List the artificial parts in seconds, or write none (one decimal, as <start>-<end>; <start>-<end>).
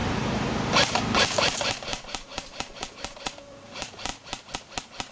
0.0-4.1